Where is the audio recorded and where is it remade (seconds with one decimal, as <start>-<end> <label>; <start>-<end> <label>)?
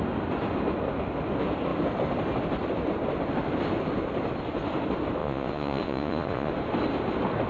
0.0-5.2 recorded; 5.2-6.5 remade; 6.5-7.5 recorded